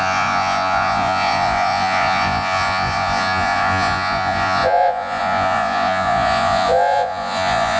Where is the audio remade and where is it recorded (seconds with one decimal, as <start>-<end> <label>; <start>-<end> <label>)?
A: 0.0-7.8 remade